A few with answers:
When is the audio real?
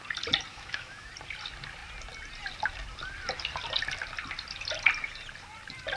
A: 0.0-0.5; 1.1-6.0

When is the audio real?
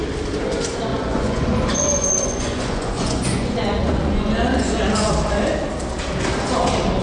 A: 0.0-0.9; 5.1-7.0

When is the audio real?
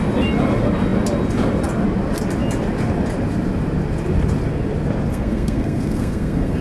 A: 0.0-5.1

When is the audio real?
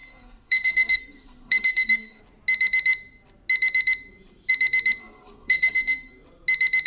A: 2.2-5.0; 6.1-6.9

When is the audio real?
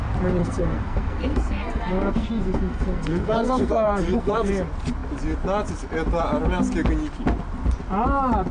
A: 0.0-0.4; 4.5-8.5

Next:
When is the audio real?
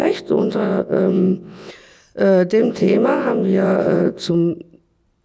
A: 1.7-2.6; 4.3-5.2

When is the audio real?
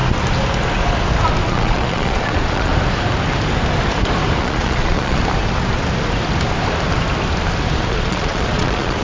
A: 0.0-1.5; 2.7-4.4; 5.2-7.9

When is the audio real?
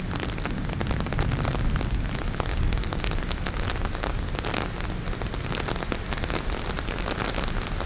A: 0.0-2.5; 3.0-7.9